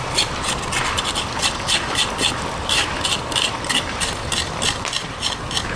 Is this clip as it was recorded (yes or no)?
yes